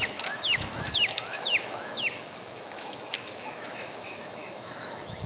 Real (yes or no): no